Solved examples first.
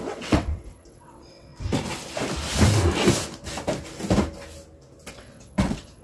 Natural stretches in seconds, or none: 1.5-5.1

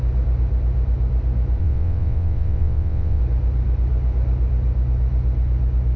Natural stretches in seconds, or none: 0.0-1.6; 3.2-6.0

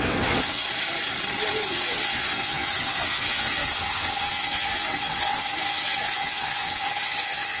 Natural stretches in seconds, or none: 0.6-1.5

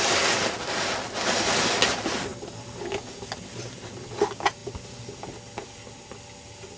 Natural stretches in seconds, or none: 0.0-6.8

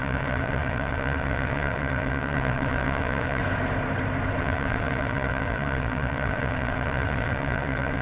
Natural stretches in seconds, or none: 3.4-4.4